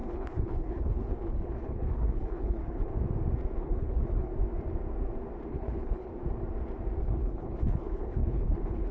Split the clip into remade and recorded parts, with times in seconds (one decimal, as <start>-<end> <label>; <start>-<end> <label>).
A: 0.0-2.9 remade; 2.9-3.6 recorded; 3.6-4.3 remade; 4.3-5.5 recorded; 5.5-6.1 remade; 6.1-7.0 recorded; 7.0-8.9 remade